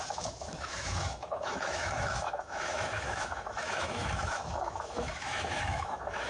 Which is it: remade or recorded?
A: remade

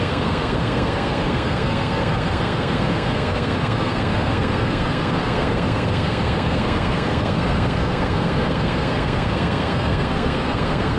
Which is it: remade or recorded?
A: remade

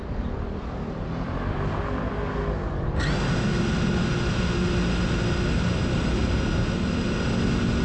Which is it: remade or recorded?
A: recorded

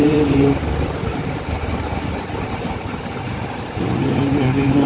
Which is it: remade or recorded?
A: remade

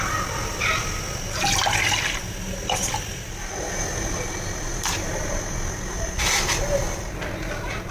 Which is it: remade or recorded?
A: recorded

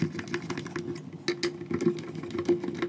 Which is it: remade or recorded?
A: recorded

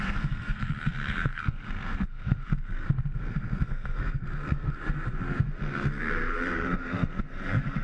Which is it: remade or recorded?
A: remade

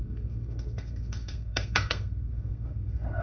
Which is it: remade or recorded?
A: remade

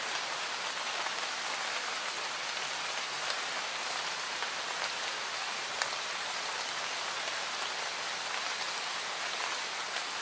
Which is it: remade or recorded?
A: recorded